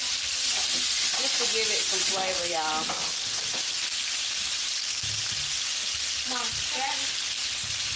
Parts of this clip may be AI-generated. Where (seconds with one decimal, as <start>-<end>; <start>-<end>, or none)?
1.9-2.7; 4.0-6.1